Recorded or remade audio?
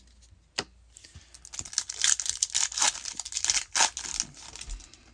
recorded